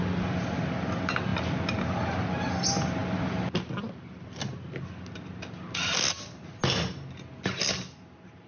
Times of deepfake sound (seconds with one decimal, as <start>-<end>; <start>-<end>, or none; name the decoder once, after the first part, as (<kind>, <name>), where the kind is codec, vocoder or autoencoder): none